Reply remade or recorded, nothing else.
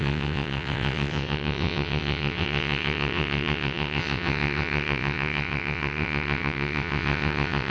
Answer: remade